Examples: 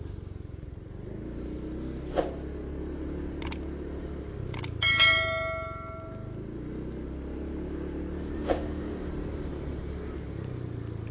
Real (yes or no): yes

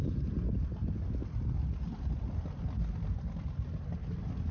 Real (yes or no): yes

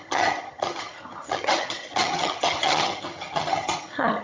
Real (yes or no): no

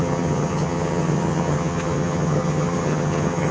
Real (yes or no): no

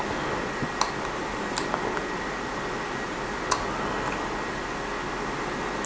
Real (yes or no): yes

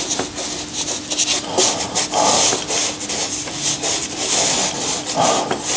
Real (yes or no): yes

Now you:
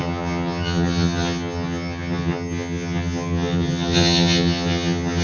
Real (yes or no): no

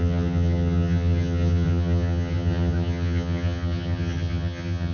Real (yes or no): no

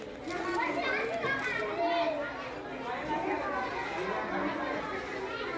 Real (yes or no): yes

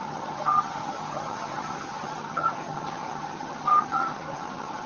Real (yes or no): no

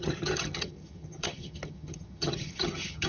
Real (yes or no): no